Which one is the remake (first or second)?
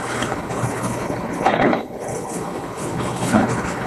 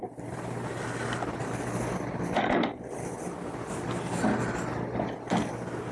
first